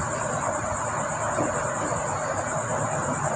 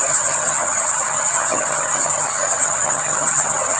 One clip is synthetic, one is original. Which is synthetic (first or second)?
second